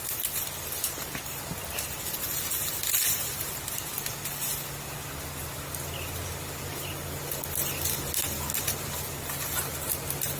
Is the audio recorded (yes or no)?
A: yes